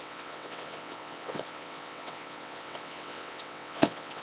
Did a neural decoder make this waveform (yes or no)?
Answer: yes